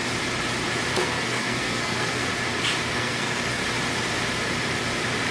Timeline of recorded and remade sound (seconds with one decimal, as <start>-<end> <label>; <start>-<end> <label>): 0.0-0.9 recorded; 0.9-2.3 remade; 2.3-2.9 recorded; 2.9-3.6 remade; 3.6-5.3 recorded